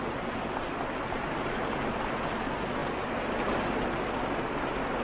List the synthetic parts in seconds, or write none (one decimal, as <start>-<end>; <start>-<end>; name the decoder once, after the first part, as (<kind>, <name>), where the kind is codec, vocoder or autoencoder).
none